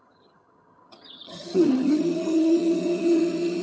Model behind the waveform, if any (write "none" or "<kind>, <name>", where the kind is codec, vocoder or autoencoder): vocoder, HiFi-GAN